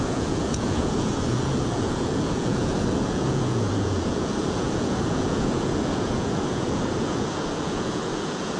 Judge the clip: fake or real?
fake